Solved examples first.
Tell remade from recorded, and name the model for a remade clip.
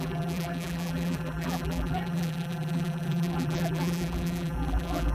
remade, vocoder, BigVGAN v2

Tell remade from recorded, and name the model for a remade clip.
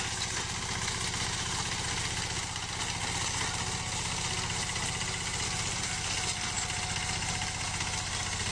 recorded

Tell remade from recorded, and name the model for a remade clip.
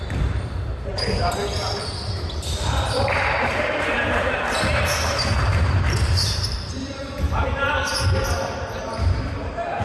remade, vocoder, BigVGAN v2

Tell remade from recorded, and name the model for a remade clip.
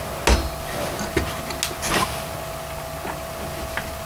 recorded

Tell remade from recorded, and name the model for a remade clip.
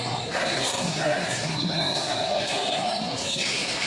remade, codec, SNAC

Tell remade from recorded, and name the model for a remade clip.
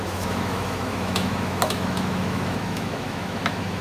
remade, autoencoder, DAC-VAE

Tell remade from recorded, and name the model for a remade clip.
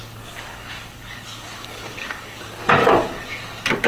remade, codec, DAC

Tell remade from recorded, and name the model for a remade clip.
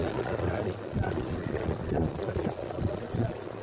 remade, vocoder, Vocos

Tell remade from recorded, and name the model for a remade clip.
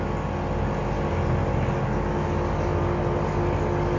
recorded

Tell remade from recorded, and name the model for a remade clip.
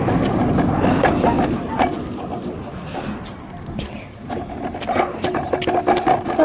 recorded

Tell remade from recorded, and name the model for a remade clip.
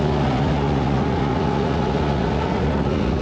remade, vocoder, Vocos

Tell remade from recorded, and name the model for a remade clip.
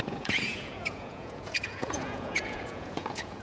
remade, vocoder, Vocos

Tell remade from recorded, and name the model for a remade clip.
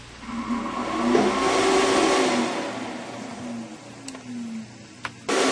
recorded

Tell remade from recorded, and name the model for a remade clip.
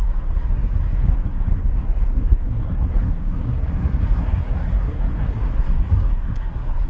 remade, codec, SNAC